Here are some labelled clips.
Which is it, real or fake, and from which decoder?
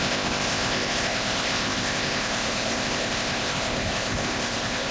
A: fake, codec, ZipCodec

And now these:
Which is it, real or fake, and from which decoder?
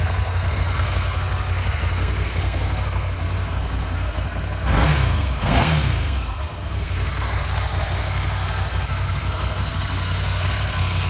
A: fake, codec, SNAC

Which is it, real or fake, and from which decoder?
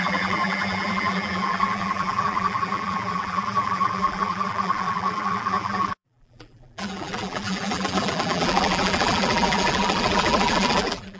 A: fake, vocoder, BigVGAN v2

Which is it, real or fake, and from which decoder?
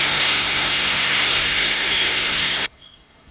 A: fake, codec, SNAC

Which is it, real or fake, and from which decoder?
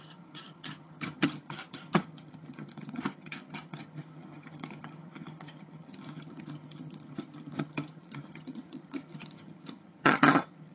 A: fake, vocoder, HiFi-GAN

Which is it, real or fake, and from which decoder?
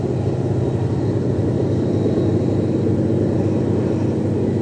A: real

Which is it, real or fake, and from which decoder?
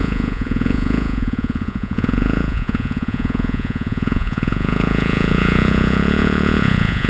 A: fake, vocoder, Vocos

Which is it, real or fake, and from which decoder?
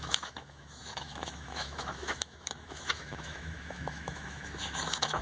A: fake, autoencoder, DAC-VAE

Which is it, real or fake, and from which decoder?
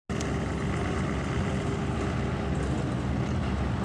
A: real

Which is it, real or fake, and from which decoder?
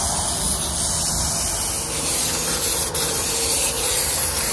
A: real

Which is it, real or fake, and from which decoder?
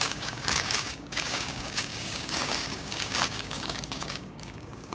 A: fake, codec, DAC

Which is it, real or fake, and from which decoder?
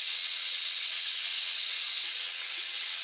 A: fake, vocoder, WaveNeXt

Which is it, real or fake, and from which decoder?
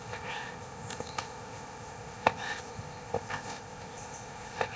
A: fake, codec, ZipCodec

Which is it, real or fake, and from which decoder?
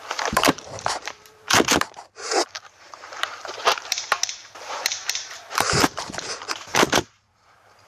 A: fake, vocoder, BigVGAN v2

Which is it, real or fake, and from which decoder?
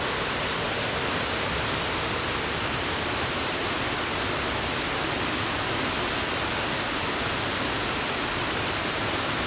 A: real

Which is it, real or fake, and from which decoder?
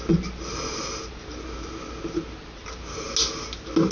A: real